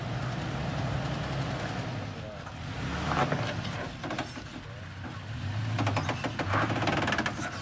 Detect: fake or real real